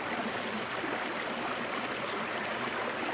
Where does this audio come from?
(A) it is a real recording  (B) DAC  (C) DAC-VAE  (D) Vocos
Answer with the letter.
A